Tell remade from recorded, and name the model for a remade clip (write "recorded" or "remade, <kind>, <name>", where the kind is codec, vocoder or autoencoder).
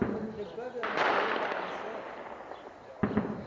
recorded